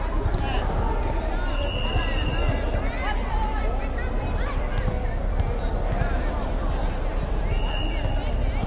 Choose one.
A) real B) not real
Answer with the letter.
A